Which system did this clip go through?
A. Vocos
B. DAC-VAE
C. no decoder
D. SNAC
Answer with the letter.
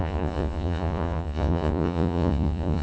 A